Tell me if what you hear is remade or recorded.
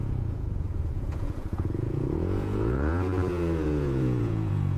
remade